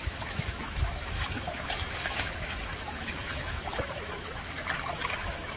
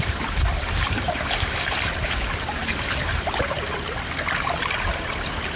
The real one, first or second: second